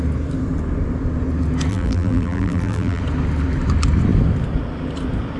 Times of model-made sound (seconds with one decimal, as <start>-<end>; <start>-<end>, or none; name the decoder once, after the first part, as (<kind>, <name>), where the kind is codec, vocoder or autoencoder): 1.7-3.0 (vocoder, BigVGAN v2)